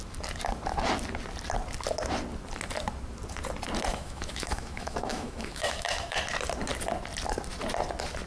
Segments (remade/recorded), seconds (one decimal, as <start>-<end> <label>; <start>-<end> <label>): 0.0-3.9 recorded; 3.9-6.2 remade; 6.2-8.3 recorded

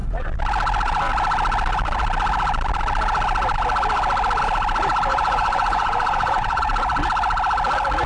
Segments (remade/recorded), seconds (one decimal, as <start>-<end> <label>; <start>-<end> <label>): 0.0-5.1 recorded; 5.1-6.6 remade; 6.6-8.1 recorded

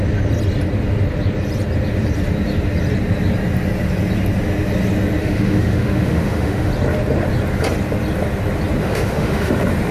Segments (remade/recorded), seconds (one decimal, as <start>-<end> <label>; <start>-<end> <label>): 0.0-5.2 recorded; 5.2-6.7 remade; 6.7-8.8 recorded; 8.8-9.5 remade; 9.5-9.9 recorded

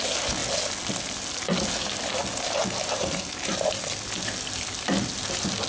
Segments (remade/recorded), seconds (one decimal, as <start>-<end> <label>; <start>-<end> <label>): 0.0-5.7 recorded

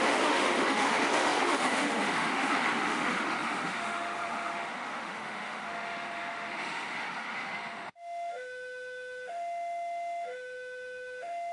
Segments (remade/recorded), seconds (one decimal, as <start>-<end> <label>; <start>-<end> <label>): 0.0-11.5 remade

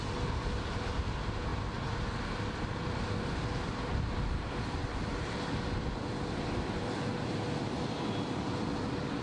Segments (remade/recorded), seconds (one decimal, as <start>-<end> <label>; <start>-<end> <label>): 0.0-9.2 recorded

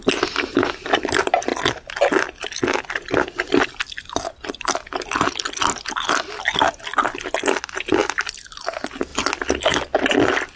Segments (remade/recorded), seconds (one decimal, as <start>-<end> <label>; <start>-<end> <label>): 0.0-10.6 recorded